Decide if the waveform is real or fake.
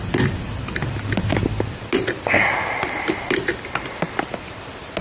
real